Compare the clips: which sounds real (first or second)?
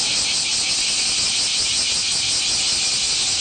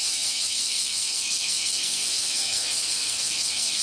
first